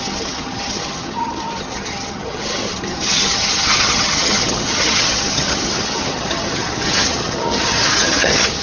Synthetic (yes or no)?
yes